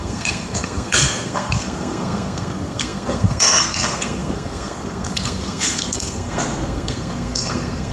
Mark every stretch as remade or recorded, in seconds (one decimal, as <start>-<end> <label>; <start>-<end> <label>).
0.0-7.9 remade